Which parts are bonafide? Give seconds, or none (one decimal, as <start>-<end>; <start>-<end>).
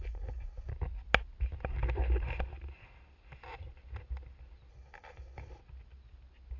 0.7-4.7; 5.6-6.6